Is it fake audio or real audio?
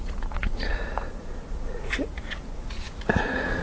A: fake